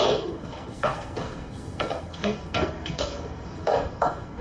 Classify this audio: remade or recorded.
remade